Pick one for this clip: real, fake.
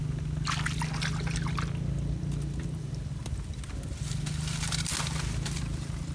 real